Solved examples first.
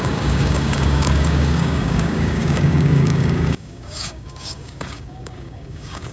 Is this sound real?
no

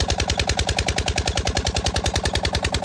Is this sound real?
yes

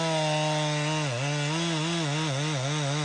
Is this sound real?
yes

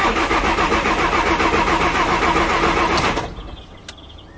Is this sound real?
yes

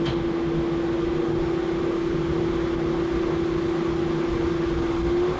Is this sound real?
yes